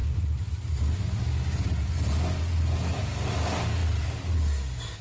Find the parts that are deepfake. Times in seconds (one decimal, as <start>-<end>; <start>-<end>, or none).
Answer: none